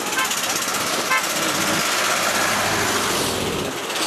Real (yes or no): yes